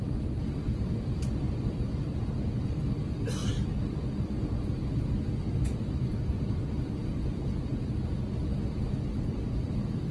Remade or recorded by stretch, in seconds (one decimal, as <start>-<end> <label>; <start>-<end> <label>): 0.0-3.4 remade; 3.4-6.1 recorded; 6.1-7.7 remade; 7.7-8.9 recorded; 8.9-10.1 remade